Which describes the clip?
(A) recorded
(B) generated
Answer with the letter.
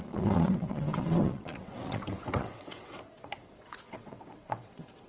B